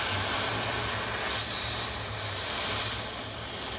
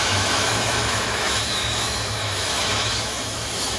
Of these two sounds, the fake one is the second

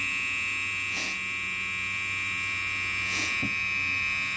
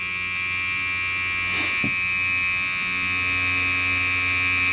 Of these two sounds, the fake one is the first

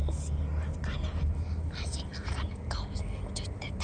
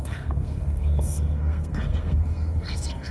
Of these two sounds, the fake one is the second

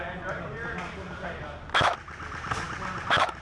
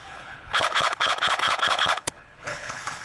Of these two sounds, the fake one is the second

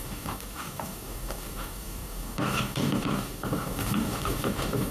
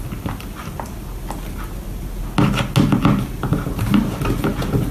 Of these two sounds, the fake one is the first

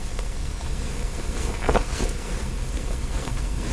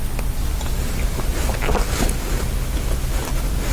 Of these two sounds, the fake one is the first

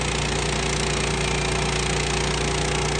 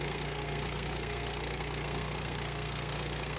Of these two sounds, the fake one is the second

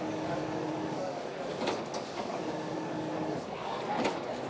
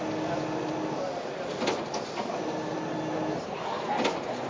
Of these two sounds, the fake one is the first